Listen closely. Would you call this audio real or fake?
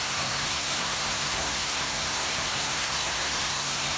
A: fake